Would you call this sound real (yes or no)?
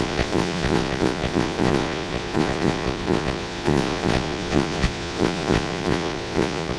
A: no